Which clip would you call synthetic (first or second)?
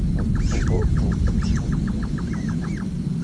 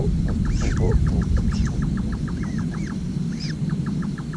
second